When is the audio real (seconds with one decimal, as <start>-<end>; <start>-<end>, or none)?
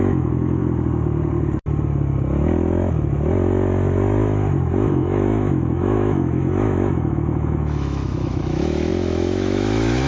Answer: 0.6-4.9